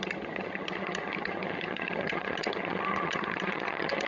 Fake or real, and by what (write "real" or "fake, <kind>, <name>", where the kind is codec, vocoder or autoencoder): fake, vocoder, HiFi-GAN